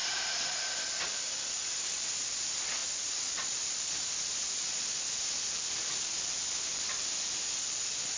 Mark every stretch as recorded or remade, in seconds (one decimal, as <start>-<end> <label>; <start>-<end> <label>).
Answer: 0.0-8.2 recorded